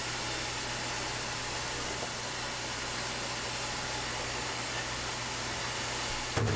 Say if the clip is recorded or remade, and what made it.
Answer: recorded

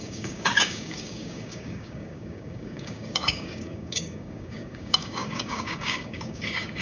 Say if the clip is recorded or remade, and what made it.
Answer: remade, codec, DAC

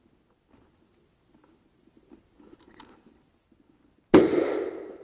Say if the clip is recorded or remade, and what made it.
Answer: recorded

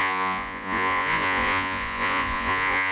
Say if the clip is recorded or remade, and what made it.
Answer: remade, vocoder, Vocos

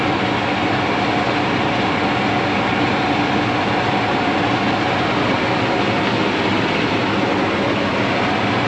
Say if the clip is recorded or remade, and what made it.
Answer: recorded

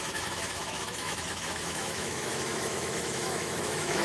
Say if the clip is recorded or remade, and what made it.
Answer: remade, autoencoder, DAC-VAE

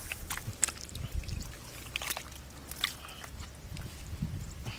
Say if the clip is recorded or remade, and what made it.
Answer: recorded